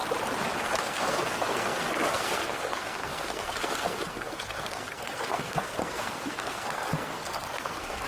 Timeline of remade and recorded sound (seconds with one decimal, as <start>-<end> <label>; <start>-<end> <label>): 0.0-0.6 recorded; 0.6-8.1 remade